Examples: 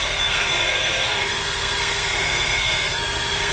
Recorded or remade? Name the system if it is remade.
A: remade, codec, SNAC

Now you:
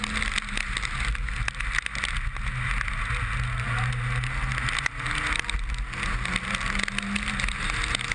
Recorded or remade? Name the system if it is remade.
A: recorded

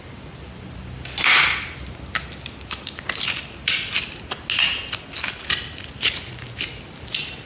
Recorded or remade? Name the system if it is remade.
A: recorded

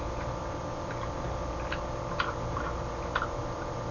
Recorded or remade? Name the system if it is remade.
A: recorded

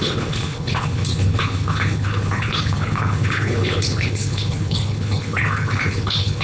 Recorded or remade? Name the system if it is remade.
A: remade, codec, HILCodec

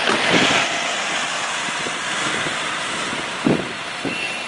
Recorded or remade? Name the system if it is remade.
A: recorded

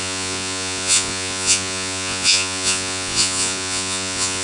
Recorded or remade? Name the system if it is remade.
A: remade, vocoder, Vocos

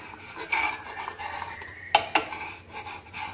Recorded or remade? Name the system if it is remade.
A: recorded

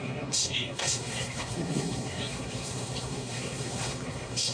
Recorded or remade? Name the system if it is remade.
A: remade, codec, SNAC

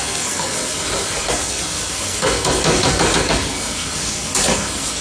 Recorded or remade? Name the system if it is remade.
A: remade, codec, SNAC